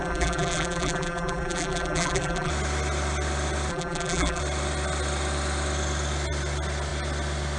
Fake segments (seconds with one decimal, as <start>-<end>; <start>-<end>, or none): 0.0-2.5; 3.7-4.4

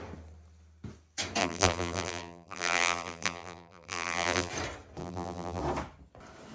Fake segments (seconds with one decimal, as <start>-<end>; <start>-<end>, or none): 1.4-4.5; 5.0-5.6

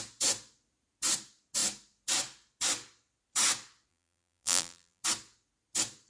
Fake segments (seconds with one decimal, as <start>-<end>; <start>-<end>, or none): 3.9-5.0

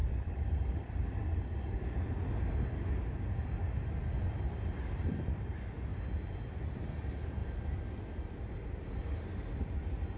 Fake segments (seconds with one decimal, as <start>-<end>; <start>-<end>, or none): 4.5-7.4; 8.5-10.2

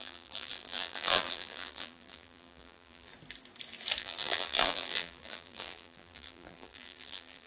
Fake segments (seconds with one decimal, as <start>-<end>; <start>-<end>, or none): 0.0-3.1; 4.0-7.5

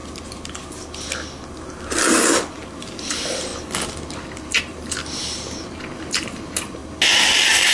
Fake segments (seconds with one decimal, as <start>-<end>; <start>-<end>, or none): 2.5-3.5; 4.6-5.0; 6.2-6.8

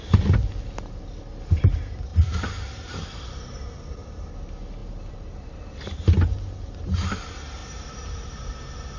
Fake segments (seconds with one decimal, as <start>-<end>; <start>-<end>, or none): 2.1-4.3; 4.8-5.6; 7.6-8.4